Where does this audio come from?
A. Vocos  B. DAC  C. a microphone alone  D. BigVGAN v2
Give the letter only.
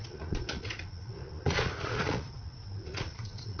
A